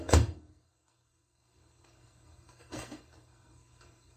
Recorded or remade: remade